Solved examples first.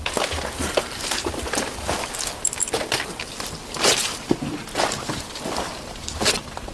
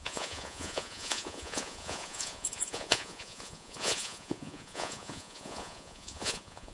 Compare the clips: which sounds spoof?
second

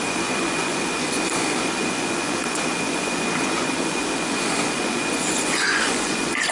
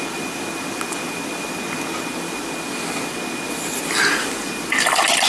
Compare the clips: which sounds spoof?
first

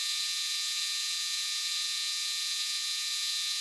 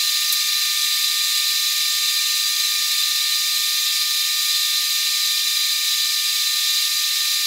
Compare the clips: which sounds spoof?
first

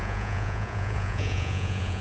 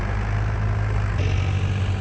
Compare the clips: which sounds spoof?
first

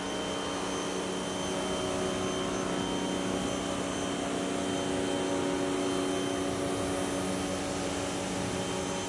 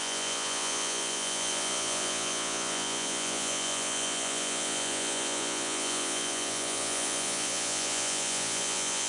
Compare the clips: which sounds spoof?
second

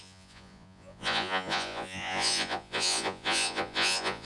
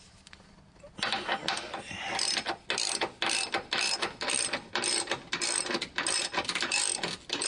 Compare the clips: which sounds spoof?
first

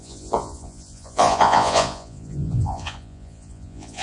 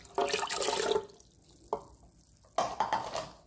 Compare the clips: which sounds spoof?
first